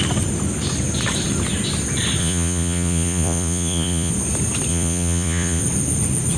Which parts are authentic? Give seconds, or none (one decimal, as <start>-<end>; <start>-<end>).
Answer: 0.0-2.2; 4.1-4.7; 5.6-6.4